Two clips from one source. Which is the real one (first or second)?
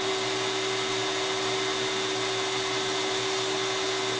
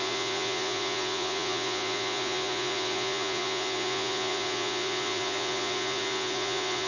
first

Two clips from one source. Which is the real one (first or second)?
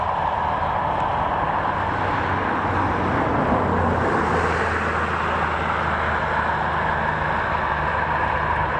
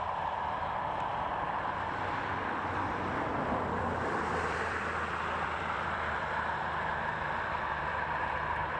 first